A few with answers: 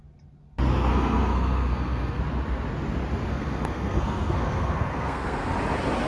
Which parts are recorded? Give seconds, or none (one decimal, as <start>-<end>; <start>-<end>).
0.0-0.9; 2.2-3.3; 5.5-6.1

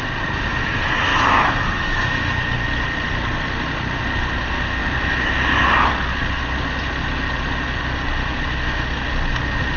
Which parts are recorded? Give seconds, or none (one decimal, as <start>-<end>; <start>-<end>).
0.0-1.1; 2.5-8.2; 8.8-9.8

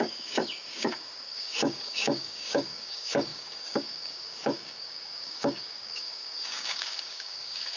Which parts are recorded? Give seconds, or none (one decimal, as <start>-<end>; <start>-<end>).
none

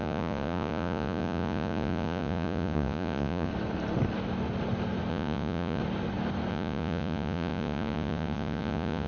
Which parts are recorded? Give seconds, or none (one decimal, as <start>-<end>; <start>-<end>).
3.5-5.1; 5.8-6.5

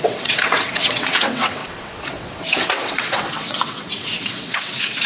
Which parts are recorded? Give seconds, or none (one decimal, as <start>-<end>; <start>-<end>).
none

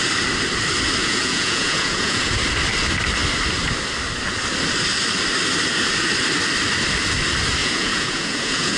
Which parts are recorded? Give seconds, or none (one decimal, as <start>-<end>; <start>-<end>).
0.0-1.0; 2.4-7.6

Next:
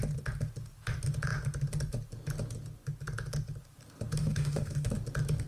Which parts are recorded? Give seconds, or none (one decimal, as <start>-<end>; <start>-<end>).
0.0-4.2; 4.9-5.5